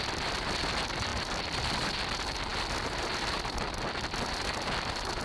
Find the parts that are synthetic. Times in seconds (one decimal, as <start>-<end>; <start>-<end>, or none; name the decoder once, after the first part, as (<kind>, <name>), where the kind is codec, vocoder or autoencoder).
none